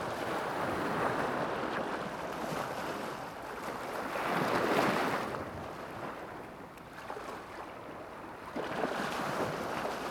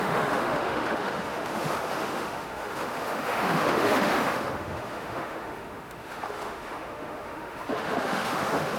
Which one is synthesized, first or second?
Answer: second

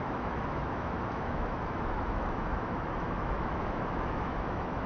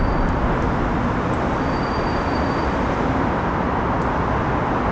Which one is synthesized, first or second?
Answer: first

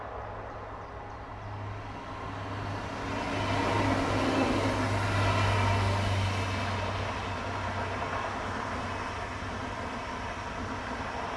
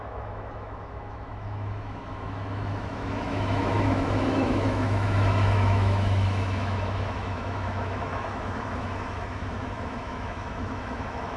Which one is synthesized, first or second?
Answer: second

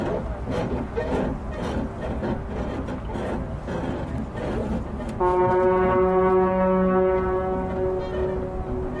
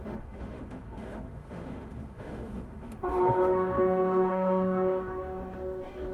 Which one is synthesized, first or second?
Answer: second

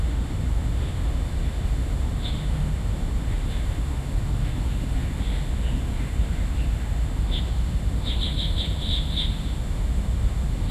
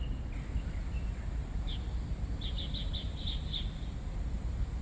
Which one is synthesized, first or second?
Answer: first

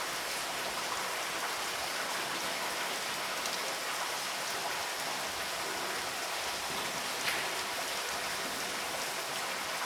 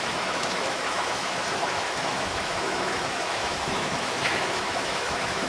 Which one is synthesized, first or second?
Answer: second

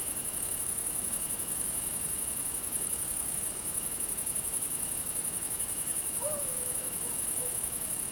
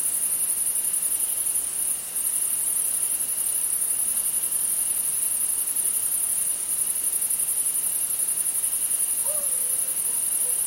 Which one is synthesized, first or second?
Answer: first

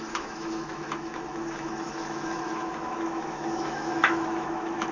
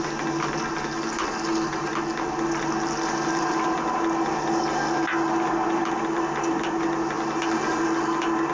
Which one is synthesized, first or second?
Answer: first